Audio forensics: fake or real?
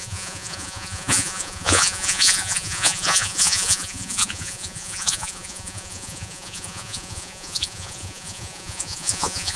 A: fake